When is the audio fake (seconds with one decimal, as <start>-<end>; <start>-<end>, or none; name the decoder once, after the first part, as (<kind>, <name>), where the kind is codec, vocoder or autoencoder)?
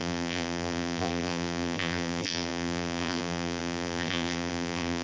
0.0-5.0 (vocoder, BigVGAN v2)